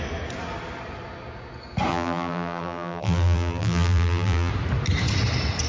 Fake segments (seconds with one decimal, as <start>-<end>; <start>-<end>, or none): 1.9-4.5

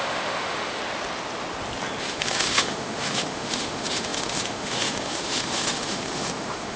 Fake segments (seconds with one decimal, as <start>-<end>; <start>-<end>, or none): 0.0-0.8; 2.0-6.8